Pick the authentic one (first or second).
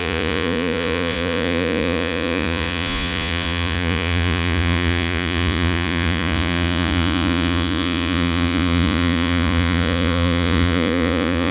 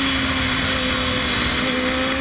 second